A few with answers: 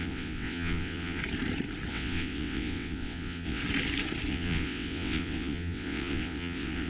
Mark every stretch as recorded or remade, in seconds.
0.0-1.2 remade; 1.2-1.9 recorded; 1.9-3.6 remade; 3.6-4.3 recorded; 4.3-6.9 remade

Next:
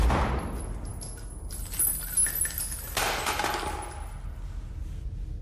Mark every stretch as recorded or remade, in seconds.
0.0-5.4 recorded

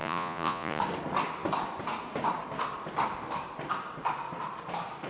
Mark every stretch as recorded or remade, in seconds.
0.0-0.8 remade; 0.8-5.1 recorded

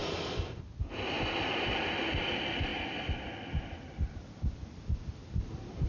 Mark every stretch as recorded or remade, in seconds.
0.0-5.9 recorded

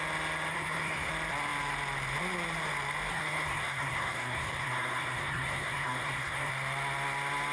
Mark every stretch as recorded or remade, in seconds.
0.0-0.5 recorded; 0.5-1.1 remade; 1.1-3.1 recorded; 3.1-6.5 remade; 6.5-7.5 recorded

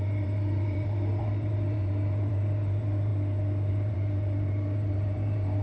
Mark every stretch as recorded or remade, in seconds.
0.0-3.1 remade; 3.1-3.7 recorded; 3.7-5.6 remade